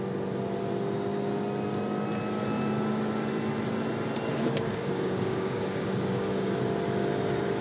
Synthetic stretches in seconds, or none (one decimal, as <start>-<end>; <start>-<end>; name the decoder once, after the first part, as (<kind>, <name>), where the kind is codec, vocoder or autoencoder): 4.3-6.6 (codec, DAC)